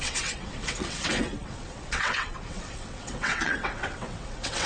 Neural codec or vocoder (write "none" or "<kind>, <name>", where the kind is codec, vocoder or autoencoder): vocoder, WaveNeXt